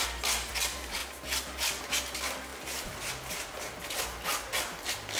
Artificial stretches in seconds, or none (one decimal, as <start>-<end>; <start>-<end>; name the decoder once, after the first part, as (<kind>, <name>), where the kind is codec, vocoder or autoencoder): none